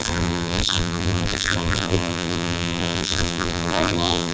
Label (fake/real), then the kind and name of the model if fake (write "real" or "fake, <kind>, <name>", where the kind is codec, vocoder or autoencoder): fake, vocoder, BigVGAN v2